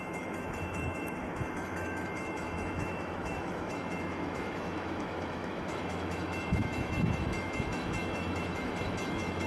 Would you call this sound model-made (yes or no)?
yes